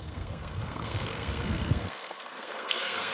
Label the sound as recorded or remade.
remade